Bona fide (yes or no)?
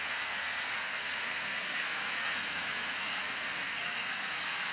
no